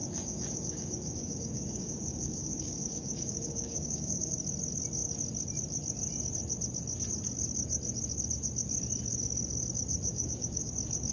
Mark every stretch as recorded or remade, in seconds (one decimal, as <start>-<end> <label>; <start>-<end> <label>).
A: 0.0-4.3 remade; 4.3-10.1 recorded; 10.1-10.7 remade; 10.7-11.1 recorded